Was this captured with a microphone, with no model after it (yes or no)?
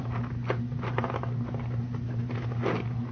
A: yes